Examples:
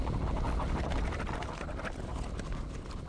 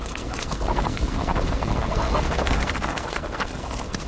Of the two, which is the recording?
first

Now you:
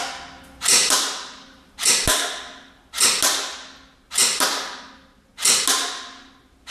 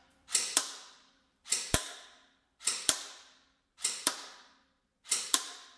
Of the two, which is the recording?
first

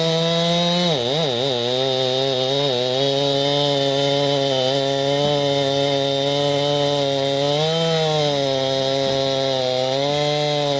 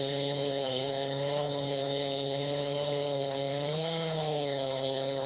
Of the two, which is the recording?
first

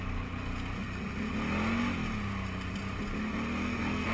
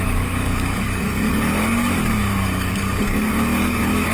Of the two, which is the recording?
first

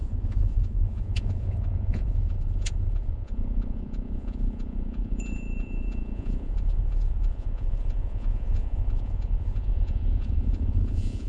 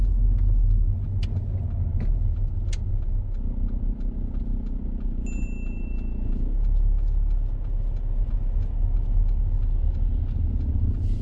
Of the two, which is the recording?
second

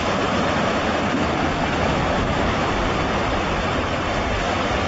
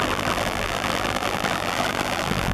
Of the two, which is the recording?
first